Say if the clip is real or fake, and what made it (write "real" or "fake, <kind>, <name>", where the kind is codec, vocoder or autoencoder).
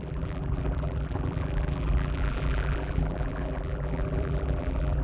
fake, vocoder, BigVGAN v2